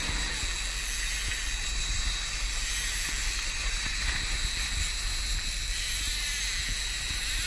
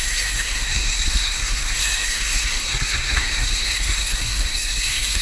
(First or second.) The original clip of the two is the first